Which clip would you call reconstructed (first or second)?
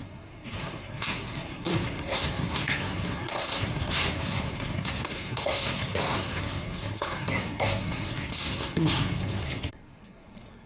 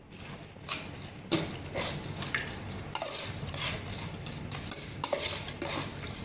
first